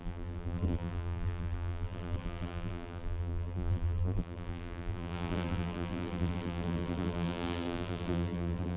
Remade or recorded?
remade